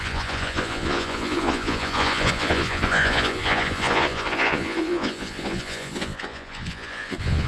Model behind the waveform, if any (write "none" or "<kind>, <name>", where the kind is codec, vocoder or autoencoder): vocoder, Vocos